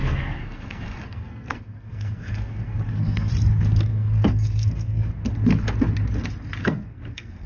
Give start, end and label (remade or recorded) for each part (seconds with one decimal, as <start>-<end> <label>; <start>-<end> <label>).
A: 0.0-3.3 remade; 3.3-3.9 recorded; 3.9-5.1 remade; 5.1-6.6 recorded; 6.6-7.5 remade